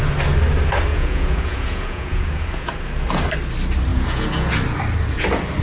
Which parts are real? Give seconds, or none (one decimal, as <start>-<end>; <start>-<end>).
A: 0.0-0.9; 2.7-3.9; 4.5-5.6